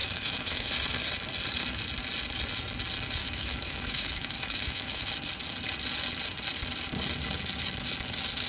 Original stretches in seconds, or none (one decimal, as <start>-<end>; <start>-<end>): 0.7-3.2; 5.1-8.5